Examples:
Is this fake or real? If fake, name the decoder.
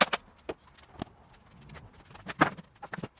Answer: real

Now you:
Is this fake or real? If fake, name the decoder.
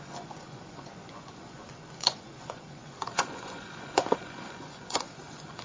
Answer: fake, vocoder, Vocos